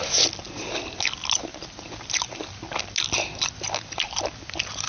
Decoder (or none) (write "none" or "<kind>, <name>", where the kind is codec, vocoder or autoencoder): none